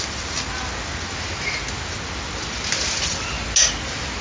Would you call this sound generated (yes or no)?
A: no